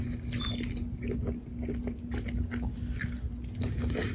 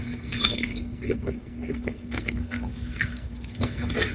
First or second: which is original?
first